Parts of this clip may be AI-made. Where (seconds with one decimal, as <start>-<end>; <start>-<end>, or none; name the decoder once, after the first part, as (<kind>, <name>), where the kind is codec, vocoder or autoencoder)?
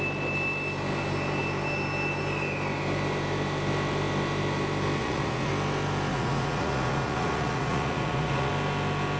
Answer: 5.0-5.5 (vocoder, Vocos); 6.1-8.5